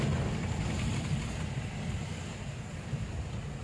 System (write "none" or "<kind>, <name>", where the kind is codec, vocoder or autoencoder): none